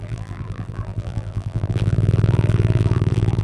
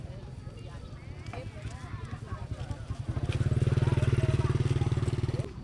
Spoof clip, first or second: first